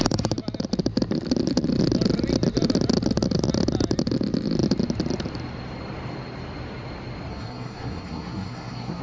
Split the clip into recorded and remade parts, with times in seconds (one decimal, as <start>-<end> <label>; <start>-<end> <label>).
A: 0.0-7.3 recorded; 7.3-9.0 remade